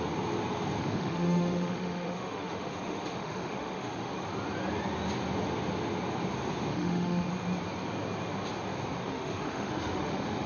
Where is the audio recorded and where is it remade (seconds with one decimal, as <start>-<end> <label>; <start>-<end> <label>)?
0.0-0.8 recorded; 0.8-4.1 remade; 4.1-6.7 recorded; 6.7-7.3 remade; 7.3-9.0 recorded; 9.0-10.5 remade